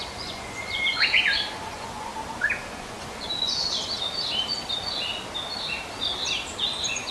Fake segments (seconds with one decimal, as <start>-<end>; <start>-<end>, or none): 0.0-2.1; 2.7-3.6; 6.6-7.1